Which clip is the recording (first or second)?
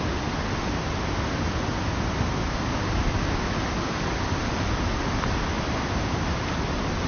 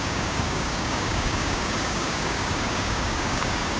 first